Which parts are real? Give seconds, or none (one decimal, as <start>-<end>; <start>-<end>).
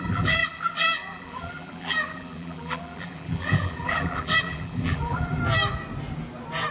5.4-6.7